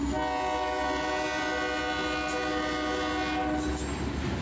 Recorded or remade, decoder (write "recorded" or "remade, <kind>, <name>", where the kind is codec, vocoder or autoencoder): recorded